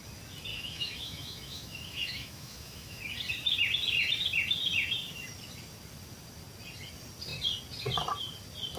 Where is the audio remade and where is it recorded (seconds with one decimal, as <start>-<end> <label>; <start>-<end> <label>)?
0.0-0.5 recorded; 0.5-3.0 remade; 3.0-8.8 recorded